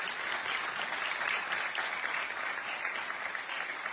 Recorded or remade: recorded